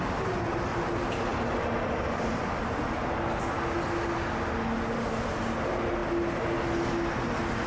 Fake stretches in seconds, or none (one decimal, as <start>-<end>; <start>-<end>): none